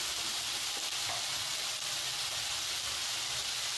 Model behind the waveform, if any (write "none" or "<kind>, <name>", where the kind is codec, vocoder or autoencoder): none